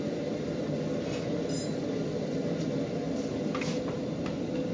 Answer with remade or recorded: recorded